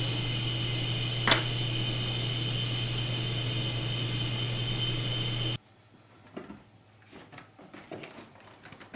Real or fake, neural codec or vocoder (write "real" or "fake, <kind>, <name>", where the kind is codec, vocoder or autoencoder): real